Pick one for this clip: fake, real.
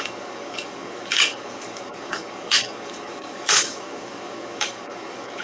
fake